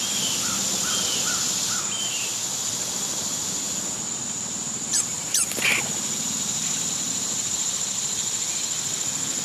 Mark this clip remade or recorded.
recorded